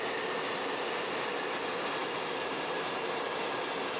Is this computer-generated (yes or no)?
no